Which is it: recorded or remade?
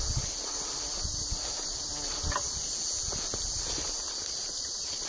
recorded